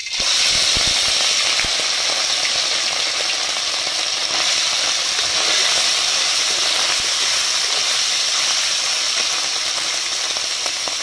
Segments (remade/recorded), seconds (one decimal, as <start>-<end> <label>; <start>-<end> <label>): 0.0-11.0 recorded